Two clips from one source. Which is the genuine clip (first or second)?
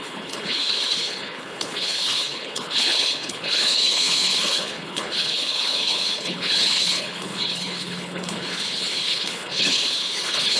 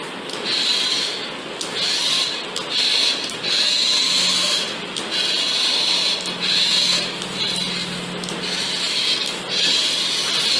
second